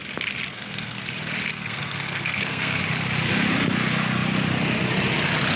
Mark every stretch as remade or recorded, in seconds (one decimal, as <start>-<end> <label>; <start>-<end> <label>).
0.0-0.5 recorded; 0.5-1.0 remade; 1.0-1.5 recorded; 1.5-2.8 remade; 2.8-5.6 recorded